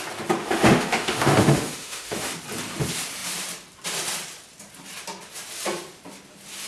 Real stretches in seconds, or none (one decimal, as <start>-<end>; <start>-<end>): 0.0-0.4; 2.3-6.7